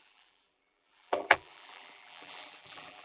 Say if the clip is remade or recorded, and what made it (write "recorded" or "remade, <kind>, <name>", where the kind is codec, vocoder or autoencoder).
remade, vocoder, BigVGAN v2